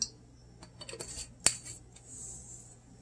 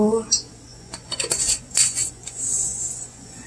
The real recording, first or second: first